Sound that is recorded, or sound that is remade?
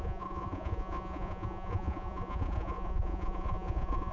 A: remade